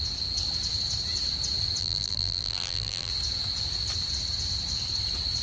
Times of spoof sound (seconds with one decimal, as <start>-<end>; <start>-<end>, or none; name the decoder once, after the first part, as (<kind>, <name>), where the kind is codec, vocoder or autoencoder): 1.8-3.1 (vocoder, BigVGAN v2)